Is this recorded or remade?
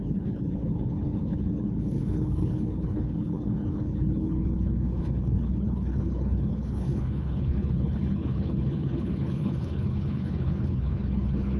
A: remade